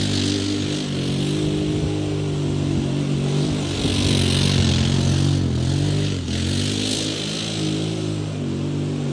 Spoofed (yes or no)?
no